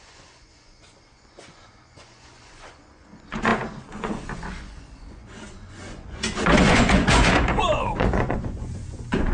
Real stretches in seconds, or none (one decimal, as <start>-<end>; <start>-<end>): none